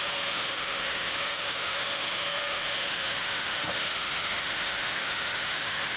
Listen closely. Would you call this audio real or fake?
fake